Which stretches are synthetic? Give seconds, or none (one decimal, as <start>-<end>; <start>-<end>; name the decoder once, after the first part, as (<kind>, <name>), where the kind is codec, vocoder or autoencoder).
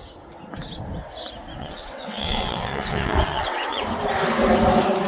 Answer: 1.6-3.8 (vocoder, WaveNeXt)